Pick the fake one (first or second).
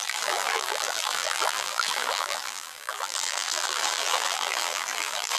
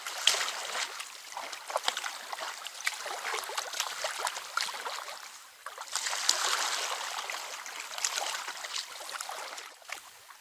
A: first